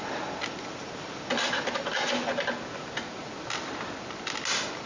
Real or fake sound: real